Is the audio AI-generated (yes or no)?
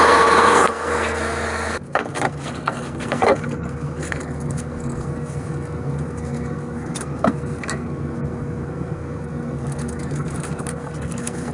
yes